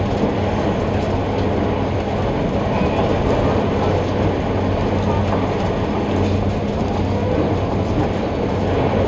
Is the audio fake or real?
real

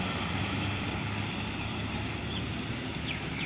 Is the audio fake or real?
real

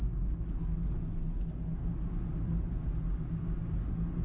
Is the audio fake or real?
real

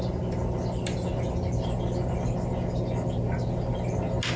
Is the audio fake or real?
real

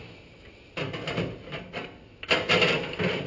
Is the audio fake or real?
real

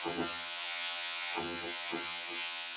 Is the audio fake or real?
fake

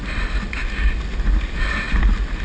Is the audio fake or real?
real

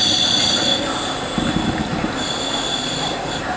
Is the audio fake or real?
real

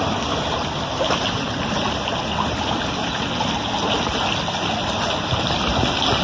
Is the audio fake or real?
real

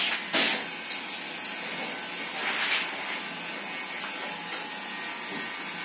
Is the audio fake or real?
real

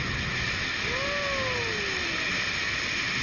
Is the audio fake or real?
real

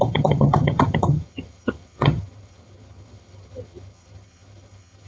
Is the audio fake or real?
fake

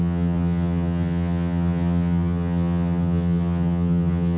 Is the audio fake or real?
fake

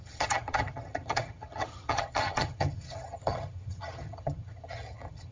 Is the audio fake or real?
fake